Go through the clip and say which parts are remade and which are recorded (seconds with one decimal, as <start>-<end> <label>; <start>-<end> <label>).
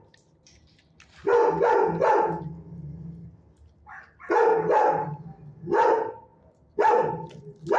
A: 0.0-7.8 recorded